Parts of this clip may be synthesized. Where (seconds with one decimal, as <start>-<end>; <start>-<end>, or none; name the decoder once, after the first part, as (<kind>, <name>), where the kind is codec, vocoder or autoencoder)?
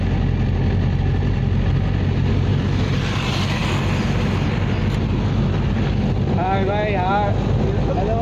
none